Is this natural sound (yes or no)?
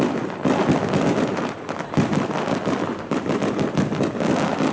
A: yes